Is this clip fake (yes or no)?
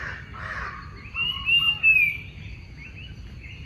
no